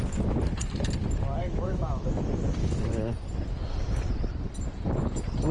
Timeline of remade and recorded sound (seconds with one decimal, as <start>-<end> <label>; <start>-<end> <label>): 0.0-1.4 recorded; 1.4-2.0 remade; 2.0-2.6 recorded; 2.6-3.2 remade; 3.2-5.5 recorded

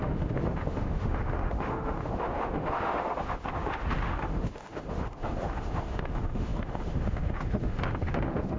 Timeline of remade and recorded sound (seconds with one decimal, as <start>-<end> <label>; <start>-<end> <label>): 0.0-8.6 remade

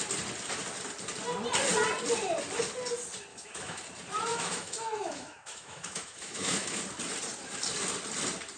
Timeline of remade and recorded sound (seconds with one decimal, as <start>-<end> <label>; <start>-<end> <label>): 0.0-3.3 recorded; 3.3-3.8 remade; 3.8-4.3 recorded; 4.3-6.8 remade; 6.8-8.6 recorded